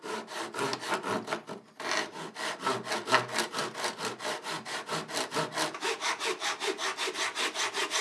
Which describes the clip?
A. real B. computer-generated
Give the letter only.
A